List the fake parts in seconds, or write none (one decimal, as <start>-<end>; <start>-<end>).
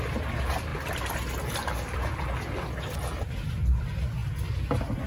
none